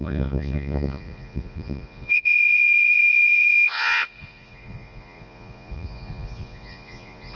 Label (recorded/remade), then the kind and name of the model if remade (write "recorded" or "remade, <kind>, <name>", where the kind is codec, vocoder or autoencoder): remade, vocoder, Vocos